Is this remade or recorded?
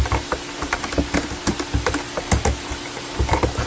recorded